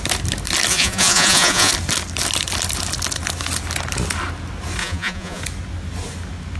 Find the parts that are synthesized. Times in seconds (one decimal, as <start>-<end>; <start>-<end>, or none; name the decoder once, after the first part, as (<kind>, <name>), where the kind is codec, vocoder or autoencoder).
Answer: 0.7-1.7 (vocoder, Vocos); 4.8-5.4